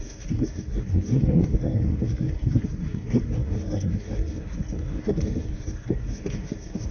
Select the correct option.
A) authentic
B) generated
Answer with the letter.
B